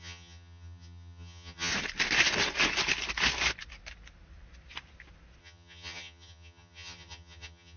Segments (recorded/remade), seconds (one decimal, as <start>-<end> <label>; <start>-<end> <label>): 0.0-1.7 remade; 1.7-5.4 recorded; 5.4-7.8 remade

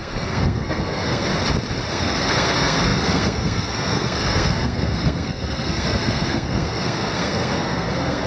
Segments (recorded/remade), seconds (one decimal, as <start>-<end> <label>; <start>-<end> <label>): 0.0-1.3 remade; 1.3-1.9 recorded; 1.9-8.3 remade

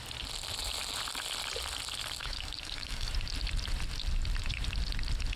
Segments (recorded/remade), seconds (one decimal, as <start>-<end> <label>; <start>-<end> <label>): 0.0-2.2 recorded; 2.2-3.1 remade; 3.1-5.4 recorded

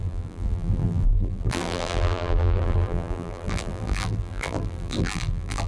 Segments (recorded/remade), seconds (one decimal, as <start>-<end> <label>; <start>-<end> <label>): 0.0-5.7 remade

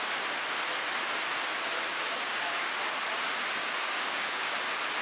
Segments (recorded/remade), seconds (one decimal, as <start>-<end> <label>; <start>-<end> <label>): 0.0-1.9 recorded; 1.9-2.7 remade; 2.7-3.6 recorded; 3.6-4.6 remade; 4.6-5.0 recorded

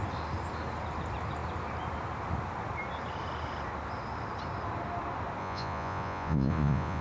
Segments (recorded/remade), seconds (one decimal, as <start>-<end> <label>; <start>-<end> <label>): 0.0-5.4 recorded; 5.4-7.0 remade

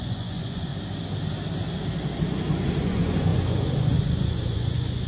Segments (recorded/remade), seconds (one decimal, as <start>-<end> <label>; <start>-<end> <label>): 0.0-0.7 remade; 0.7-2.8 recorded; 2.8-5.1 remade